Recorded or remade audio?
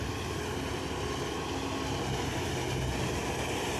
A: recorded